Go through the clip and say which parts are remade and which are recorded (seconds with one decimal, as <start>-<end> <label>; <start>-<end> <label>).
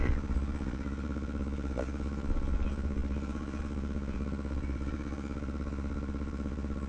0.0-6.9 remade